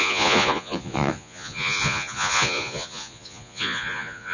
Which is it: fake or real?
fake